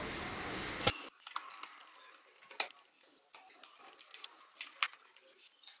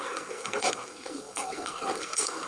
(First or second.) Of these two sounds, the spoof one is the second